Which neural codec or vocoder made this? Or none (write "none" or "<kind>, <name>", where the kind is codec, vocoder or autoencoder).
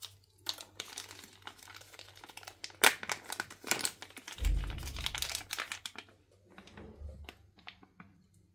none